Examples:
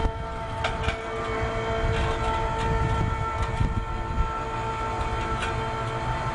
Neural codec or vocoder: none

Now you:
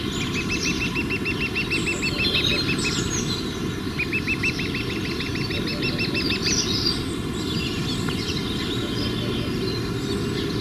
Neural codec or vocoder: none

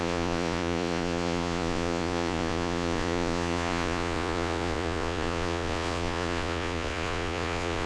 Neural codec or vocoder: vocoder, Vocos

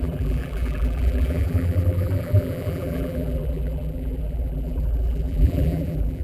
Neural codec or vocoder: vocoder, BigVGAN v2